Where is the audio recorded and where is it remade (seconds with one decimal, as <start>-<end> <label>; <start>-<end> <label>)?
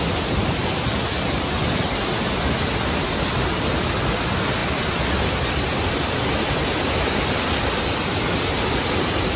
0.0-9.4 recorded